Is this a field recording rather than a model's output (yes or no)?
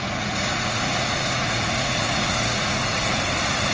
no